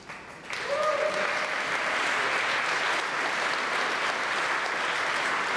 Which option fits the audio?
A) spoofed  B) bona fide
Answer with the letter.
B